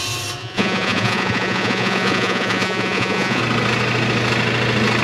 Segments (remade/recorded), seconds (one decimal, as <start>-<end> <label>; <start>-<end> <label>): 0.0-0.4 recorded; 0.4-3.4 remade; 3.4-5.0 recorded